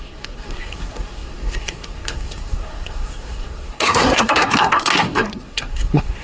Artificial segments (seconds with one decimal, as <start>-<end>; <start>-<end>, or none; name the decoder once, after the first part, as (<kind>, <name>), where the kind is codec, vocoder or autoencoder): 0.0-6.2 (codec, SNAC)